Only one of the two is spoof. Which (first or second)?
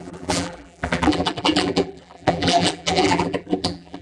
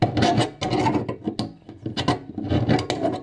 first